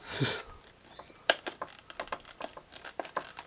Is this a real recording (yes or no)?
yes